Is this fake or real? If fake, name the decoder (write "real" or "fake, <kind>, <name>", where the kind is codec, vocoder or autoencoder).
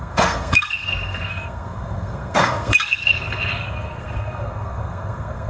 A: fake, codec, SNAC